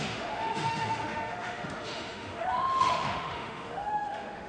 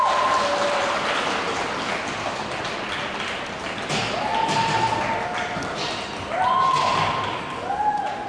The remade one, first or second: first